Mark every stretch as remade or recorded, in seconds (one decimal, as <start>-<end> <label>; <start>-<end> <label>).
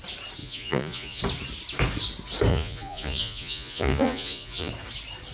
0.0-0.4 recorded; 0.4-1.2 remade; 1.2-2.5 recorded; 2.5-4.7 remade; 4.7-5.3 recorded